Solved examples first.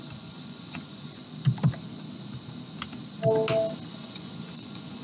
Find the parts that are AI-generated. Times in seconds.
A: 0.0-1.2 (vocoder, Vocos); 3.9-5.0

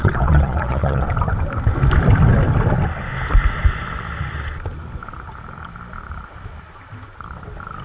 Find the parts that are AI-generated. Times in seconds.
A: 0.0-1.1 (vocoder, Vocos)

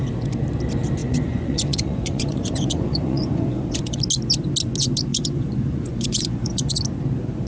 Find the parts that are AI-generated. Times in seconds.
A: 1.0-4.0 (vocoder, Vocos); 5.1-6.8